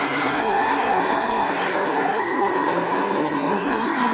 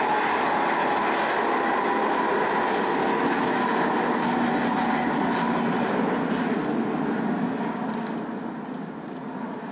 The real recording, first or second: second